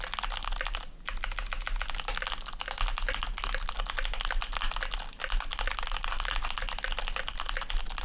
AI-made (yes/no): no